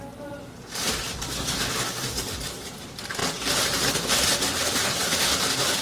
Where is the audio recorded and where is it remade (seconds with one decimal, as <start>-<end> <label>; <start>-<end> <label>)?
0.0-5.8 remade